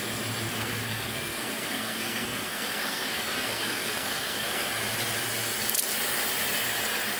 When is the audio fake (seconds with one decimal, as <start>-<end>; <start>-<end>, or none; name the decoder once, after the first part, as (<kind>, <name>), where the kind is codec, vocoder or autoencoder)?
0.5-4.7 (codec, SNAC)